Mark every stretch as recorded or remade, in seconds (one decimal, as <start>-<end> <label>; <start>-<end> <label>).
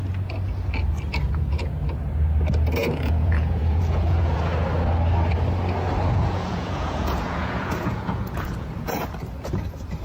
0.0-1.1 recorded; 1.1-1.8 remade; 1.8-2.8 recorded; 2.8-4.4 remade; 4.4-6.1 recorded; 6.1-9.0 remade; 9.0-10.0 recorded